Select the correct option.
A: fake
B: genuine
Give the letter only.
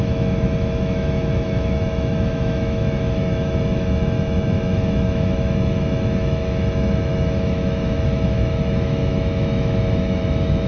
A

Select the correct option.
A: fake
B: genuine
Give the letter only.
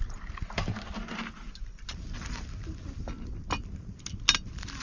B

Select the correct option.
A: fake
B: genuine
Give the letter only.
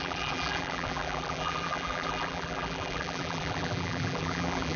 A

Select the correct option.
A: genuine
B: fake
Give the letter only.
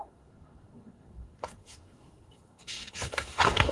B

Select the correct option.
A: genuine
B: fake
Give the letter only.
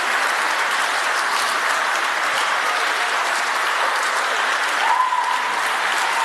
A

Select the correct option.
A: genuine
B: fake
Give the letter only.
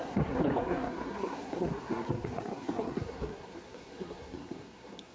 B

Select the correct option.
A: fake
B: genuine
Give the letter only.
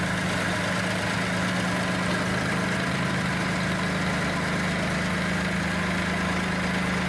B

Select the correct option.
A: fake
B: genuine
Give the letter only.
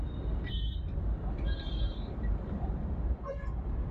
A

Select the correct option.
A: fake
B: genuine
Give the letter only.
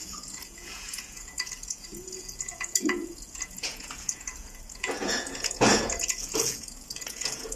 A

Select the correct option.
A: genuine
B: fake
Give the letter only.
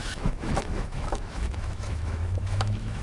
B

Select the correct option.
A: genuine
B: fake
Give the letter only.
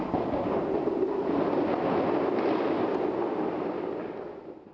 A